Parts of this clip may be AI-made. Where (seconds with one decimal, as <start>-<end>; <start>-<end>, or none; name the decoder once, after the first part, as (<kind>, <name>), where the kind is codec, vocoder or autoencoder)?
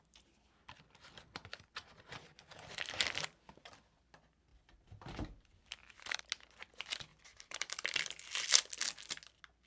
2.5-3.4 (vocoder, BigVGAN v2); 4.5-6.2; 7.1-8.5